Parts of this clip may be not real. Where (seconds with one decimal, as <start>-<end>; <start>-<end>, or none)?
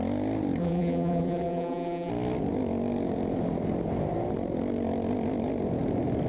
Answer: 0.6-2.1